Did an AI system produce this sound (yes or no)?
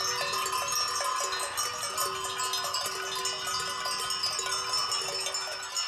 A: no